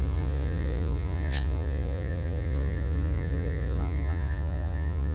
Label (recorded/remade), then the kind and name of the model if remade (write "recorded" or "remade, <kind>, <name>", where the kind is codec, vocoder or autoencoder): remade, vocoder, Vocos